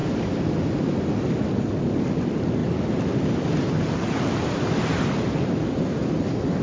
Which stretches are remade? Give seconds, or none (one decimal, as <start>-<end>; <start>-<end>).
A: none